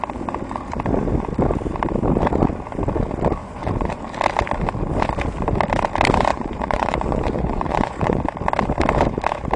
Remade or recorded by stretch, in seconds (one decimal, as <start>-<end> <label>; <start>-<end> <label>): 0.0-3.4 recorded; 3.4-4.0 remade; 4.0-6.3 recorded; 6.3-8.2 remade; 8.2-9.6 recorded